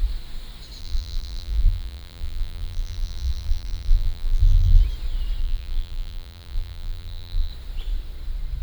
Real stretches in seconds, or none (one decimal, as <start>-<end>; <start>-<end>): 0.0-0.8; 4.8-5.4; 7.5-8.6